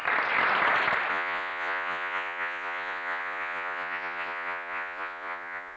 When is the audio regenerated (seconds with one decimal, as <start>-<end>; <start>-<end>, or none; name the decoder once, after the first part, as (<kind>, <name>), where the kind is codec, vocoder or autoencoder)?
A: 1.1-5.8 (vocoder, Vocos)